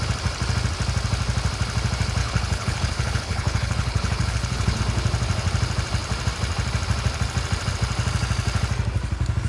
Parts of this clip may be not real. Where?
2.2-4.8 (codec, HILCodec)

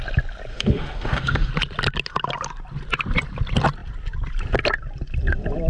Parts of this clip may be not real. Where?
0.5-1.5 (autoencoder, DAC-VAE)

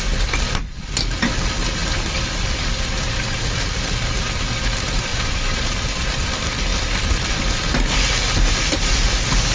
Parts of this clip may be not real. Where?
5.1-5.7 (vocoder, Vocos)

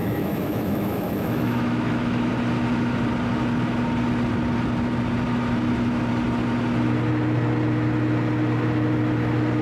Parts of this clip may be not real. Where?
0.0-2.3 (autoencoder, DAC-VAE)